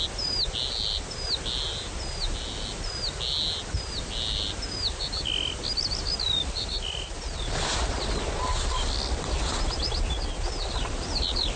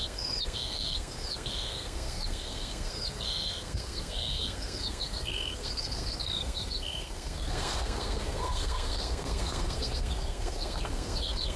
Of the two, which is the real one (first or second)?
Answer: first